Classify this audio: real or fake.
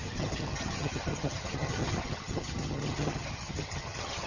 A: fake